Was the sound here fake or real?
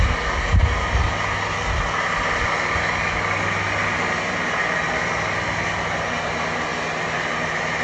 real